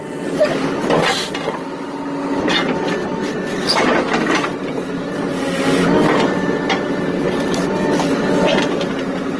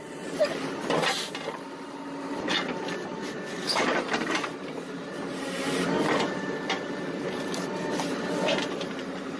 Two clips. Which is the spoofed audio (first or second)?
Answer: second